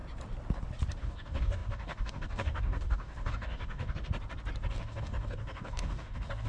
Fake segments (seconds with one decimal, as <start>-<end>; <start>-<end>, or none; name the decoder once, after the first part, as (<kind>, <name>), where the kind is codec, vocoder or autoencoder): 1.0-4.1 (codec, DAC); 4.7-6.5